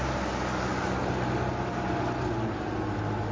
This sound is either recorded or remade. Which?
recorded